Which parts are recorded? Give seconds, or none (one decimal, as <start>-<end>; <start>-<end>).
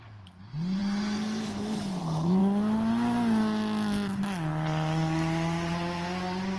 0.0-6.6